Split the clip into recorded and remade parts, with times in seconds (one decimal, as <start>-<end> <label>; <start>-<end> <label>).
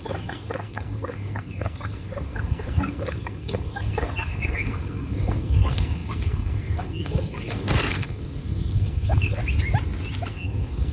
0.0-9.4 remade; 9.4-10.3 recorded; 10.3-10.9 remade